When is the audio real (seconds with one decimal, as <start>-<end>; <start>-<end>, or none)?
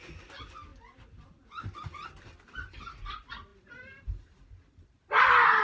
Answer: 0.0-5.6